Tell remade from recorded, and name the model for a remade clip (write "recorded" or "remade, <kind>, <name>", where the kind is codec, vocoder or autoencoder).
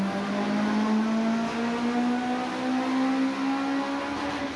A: recorded